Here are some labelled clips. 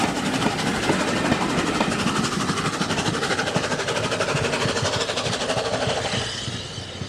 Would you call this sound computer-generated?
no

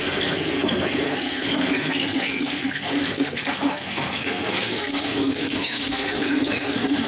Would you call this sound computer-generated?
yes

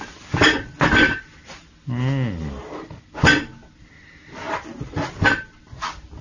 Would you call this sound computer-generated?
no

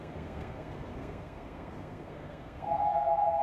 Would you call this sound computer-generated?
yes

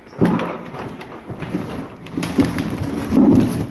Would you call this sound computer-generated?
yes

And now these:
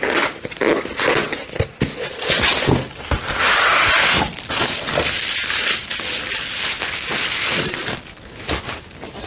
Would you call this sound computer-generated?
no